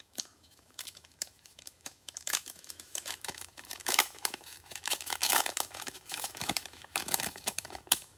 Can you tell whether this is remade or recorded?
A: remade